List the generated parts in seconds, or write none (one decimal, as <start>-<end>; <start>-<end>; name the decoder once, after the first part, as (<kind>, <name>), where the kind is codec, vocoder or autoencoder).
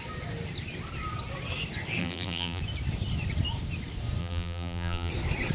2.0-2.6 (vocoder, BigVGAN v2); 4.2-5.1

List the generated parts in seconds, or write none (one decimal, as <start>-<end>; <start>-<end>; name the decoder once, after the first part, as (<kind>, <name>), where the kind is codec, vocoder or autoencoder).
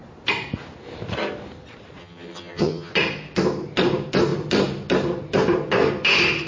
2.0-2.9 (vocoder, HiFi-GAN)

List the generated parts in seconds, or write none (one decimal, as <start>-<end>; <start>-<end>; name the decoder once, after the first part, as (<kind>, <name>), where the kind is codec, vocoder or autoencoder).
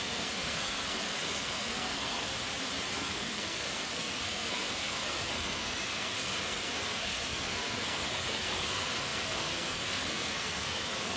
0.0-2.3 (codec, SNAC); 2.9-11.2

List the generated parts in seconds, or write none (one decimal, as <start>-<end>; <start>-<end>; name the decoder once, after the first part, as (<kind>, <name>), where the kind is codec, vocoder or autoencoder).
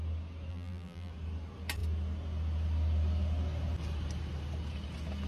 0.5-1.1 (vocoder, BigVGAN v2)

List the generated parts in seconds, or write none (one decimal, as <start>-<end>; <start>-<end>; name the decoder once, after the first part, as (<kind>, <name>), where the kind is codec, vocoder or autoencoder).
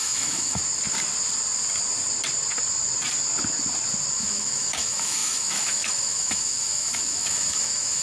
0.0-0.6 (autoencoder, DAC-VAE); 4.2-8.0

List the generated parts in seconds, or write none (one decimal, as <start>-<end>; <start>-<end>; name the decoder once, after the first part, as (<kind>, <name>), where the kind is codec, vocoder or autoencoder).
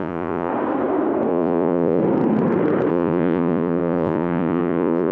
0.0-0.5 (vocoder, Vocos); 1.3-2.0; 2.9-5.1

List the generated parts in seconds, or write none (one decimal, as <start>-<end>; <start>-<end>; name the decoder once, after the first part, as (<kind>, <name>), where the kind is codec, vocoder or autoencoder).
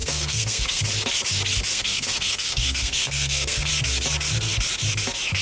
0.0-0.8 (codec, SNAC); 1.7-3.7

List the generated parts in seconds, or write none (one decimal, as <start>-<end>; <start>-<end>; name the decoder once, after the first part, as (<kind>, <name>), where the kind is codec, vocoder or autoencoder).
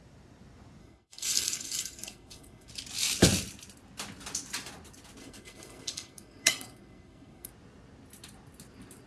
0.8-2.7 (codec, SNAC); 5.2-7.5